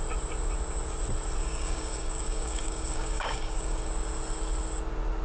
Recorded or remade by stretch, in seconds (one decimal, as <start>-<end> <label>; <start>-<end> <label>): 0.0-1.4 recorded; 1.4-3.9 remade; 3.9-5.2 recorded